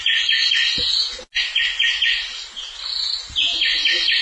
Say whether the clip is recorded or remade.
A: recorded